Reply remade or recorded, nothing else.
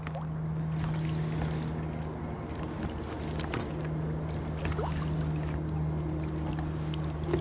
recorded